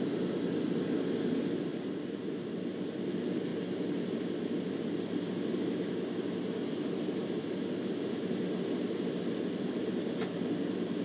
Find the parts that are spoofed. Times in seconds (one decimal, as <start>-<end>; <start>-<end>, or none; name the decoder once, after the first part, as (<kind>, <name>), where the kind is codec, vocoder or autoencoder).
none